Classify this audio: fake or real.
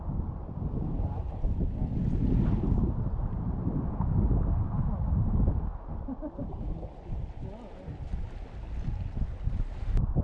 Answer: real